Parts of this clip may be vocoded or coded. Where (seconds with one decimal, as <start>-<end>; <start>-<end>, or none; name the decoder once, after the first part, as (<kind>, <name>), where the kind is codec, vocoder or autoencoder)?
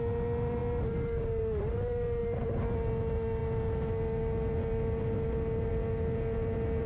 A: none